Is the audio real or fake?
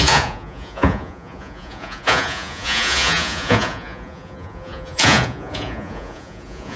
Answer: fake